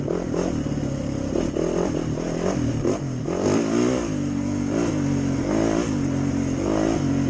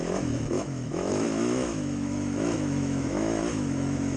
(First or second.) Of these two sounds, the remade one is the second